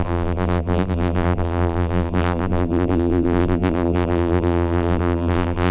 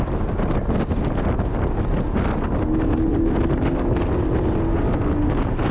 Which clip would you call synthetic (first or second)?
first